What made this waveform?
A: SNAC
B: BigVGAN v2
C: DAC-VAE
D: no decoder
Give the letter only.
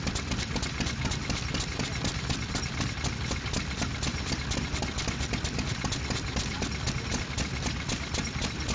D